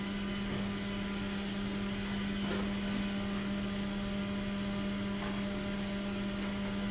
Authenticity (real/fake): real